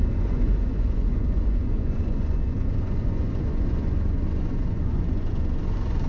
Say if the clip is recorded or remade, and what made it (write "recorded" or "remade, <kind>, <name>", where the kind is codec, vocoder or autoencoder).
remade, vocoder, Vocos